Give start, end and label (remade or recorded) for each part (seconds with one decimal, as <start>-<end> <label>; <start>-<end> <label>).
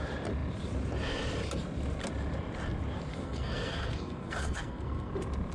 0.0-3.1 recorded; 3.1-5.1 remade; 5.1-5.5 recorded